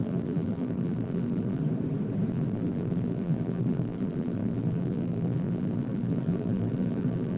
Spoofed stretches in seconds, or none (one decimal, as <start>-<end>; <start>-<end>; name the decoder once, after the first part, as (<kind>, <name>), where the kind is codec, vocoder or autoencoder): 0.0-1.6 (vocoder, BigVGAN v2); 2.3-7.4